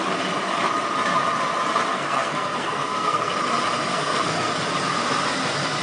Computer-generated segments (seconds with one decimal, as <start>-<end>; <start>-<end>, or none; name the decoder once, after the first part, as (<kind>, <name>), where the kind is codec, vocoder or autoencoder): 1.9-3.3 (codec, SNAC); 3.9-4.5